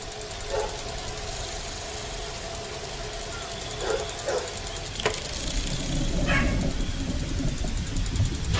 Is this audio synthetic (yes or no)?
no